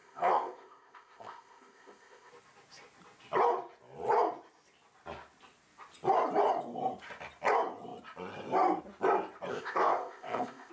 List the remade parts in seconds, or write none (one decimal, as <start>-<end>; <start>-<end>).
0.0-2.3; 9.5-10.7